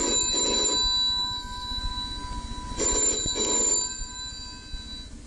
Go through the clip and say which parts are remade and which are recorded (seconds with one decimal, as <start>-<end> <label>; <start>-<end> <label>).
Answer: 0.0-1.2 recorded; 1.2-1.8 remade; 1.8-5.3 recorded